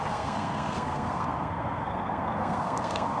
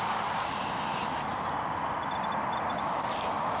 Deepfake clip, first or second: first